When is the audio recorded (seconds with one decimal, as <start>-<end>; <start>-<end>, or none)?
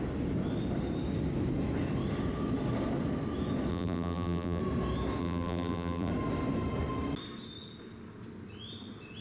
0.0-3.7; 4.6-5.2; 6.1-9.2